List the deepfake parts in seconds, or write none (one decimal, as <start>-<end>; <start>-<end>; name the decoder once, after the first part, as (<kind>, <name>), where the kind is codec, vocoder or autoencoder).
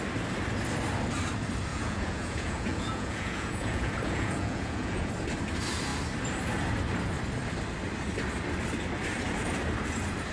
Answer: 1.7-5.1 (vocoder, Vocos)